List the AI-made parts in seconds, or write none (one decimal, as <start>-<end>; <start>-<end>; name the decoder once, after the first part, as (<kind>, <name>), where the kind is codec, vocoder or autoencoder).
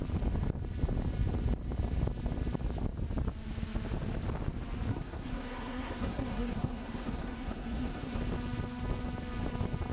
4.9-8.2 (codec, SNAC)